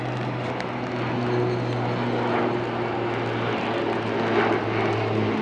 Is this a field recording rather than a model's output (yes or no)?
yes